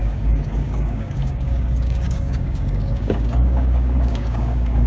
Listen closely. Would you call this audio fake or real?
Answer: fake